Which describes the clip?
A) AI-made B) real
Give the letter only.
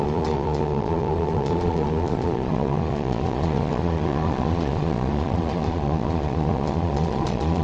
A